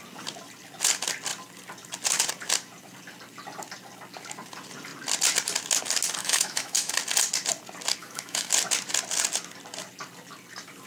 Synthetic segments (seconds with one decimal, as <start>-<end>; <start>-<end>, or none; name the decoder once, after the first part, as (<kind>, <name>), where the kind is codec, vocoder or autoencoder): 6.2-6.9 (autoencoder, DAC-VAE); 8.0-8.5